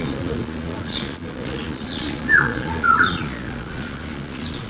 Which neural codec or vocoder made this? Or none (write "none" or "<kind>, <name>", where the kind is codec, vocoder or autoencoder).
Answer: vocoder, Vocos